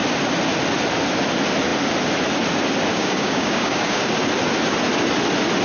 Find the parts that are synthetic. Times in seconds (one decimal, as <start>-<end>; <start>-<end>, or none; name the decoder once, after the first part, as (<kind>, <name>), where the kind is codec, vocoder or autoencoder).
2.9-4.1 (codec, DAC)

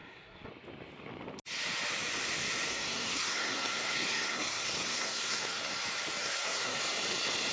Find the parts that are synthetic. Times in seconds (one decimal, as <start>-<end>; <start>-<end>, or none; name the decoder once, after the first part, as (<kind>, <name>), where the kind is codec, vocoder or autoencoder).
0.0-0.5 (codec, SNAC); 2.7-5.7; 6.2-6.8

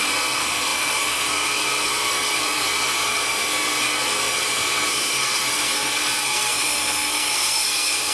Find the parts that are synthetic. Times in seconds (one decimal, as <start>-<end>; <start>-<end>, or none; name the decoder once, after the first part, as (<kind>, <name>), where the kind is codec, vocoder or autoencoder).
0.0-8.1 (codec, SNAC)

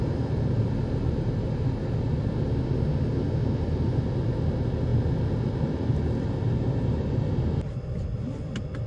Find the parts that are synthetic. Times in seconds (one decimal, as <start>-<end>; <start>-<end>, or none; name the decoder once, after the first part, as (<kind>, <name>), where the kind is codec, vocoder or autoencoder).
none

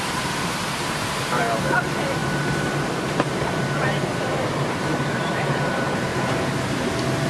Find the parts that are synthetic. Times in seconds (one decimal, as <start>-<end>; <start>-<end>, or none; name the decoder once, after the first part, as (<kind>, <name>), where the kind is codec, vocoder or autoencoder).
0.0-3.5 (vocoder, BigVGAN v2); 4.0-6.1; 6.6-7.3

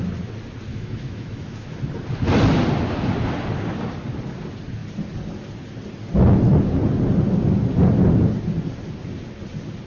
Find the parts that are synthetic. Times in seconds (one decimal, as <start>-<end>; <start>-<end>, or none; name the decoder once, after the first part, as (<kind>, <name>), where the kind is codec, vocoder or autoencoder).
0.7-1.8 (autoencoder, DAC-VAE)

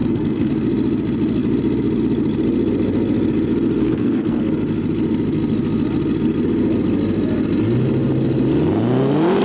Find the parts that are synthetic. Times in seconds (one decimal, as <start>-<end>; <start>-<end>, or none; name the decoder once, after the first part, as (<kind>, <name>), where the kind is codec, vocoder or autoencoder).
0.0-0.5 (codec, SNAC); 3.8-4.4